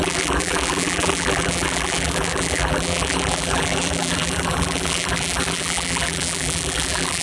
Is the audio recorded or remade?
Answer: remade